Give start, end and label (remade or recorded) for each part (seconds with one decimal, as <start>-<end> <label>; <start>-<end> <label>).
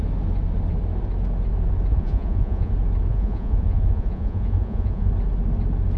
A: 0.0-1.9 recorded; 1.9-2.7 remade; 2.7-3.1 recorded; 3.1-5.1 remade; 5.1-6.0 recorded